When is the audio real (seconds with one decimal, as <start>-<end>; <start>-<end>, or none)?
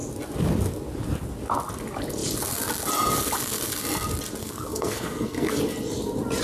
0.0-4.4; 5.6-6.4